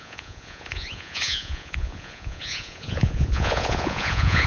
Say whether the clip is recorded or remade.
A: remade